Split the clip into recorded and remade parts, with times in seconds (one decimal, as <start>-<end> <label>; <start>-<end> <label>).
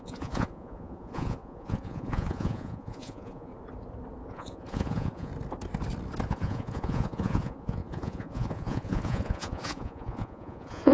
0.0-3.5 remade; 3.5-4.3 recorded; 4.3-5.3 remade; 5.3-6.3 recorded; 6.3-10.9 remade